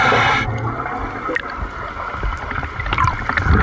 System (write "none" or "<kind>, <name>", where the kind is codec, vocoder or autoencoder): none